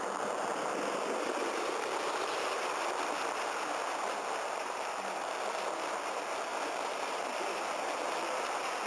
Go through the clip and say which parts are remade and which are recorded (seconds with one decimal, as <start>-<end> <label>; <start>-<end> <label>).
0.0-8.9 recorded